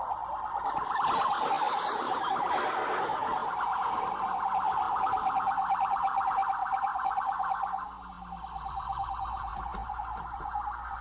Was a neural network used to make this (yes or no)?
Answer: no